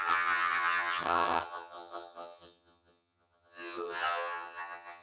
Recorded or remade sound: remade